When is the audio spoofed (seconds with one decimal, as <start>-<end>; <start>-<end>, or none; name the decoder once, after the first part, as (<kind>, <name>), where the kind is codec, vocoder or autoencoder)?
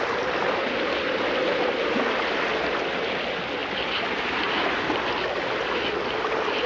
none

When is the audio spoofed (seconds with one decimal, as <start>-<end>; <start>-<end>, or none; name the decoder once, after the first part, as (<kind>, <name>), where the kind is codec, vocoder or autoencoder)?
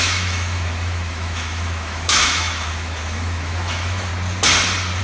0.0-4.1 (autoencoder, DAC-VAE)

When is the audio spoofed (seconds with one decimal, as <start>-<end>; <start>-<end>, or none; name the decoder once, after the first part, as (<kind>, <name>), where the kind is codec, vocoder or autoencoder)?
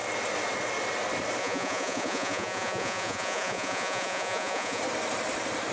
1.4-4.8 (vocoder, Vocos)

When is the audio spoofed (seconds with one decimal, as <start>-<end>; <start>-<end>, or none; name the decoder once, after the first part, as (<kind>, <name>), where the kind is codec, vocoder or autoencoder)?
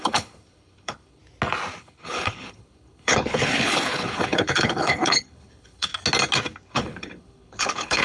0.0-1.2 (codec, HILCodec); 1.8-5.9; 6.7-8.0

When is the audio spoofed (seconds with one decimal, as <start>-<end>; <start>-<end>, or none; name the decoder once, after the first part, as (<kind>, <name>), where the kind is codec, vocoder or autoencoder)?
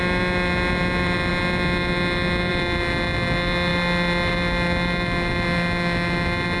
none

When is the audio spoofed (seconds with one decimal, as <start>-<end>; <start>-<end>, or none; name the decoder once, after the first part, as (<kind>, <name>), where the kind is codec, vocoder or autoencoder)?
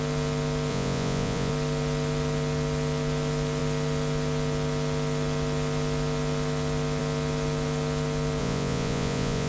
0.7-1.5 (vocoder, Vocos); 8.4-9.5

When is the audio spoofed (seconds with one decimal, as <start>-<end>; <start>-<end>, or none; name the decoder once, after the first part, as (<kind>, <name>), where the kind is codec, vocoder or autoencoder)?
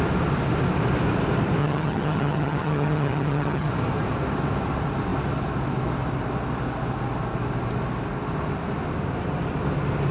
1.6-3.7 (vocoder, HiFi-GAN)